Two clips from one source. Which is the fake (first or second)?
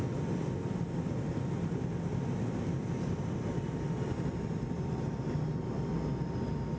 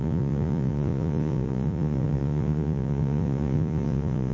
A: second